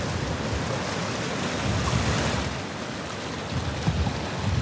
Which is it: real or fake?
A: real